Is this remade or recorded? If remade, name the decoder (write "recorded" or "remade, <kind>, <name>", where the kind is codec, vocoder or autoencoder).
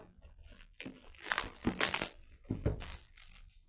remade, vocoder, BigVGAN v2